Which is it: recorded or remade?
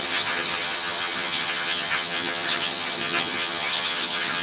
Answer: remade